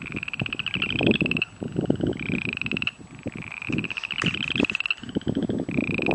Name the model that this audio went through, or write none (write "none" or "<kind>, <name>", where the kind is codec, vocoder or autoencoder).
none